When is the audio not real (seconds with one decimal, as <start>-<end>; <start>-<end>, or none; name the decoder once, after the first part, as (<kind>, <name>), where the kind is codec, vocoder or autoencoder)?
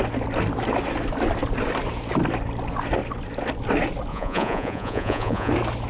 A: 4.1-5.5 (vocoder, Vocos)